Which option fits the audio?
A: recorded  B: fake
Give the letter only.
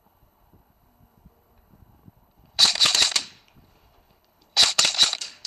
B